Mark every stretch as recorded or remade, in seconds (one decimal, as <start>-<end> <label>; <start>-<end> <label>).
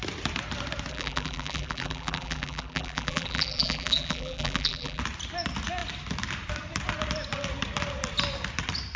0.0-0.9 recorded; 0.9-5.0 remade; 5.0-9.0 recorded